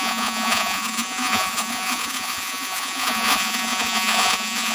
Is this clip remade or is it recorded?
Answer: remade